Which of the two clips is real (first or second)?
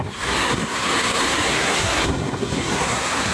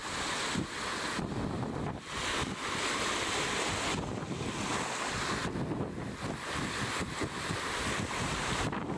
second